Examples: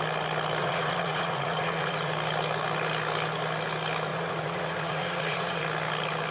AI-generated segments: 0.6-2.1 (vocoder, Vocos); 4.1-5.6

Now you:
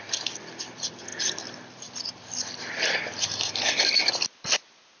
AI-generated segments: none